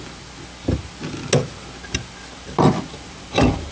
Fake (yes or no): no